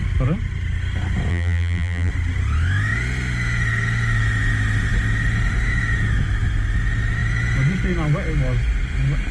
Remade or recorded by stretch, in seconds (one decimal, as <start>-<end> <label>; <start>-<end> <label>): 0.0-1.3 recorded; 1.3-2.1 remade; 2.1-9.3 recorded